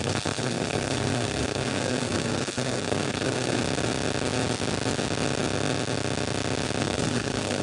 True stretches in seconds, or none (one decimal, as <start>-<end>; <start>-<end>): 3.6-6.8